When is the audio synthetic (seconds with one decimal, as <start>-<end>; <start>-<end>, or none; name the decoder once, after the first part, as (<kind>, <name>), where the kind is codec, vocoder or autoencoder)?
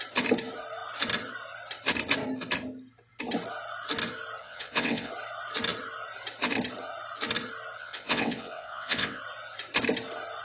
4.4-5.1 (vocoder, WaveNeXt); 7.8-9.2